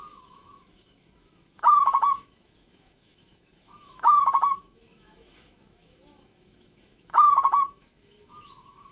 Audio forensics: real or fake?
fake